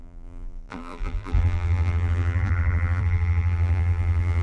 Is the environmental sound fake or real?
fake